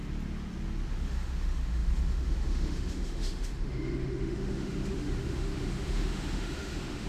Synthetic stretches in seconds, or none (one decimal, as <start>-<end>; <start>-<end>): 0.9-7.1